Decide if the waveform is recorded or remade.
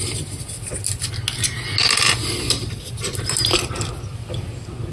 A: recorded